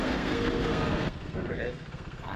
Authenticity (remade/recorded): remade